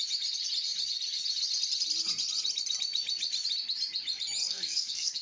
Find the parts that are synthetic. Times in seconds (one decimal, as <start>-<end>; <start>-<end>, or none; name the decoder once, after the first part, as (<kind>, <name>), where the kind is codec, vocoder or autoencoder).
4.4-5.2 (codec, SNAC)